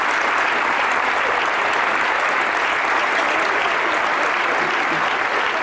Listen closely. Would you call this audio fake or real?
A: real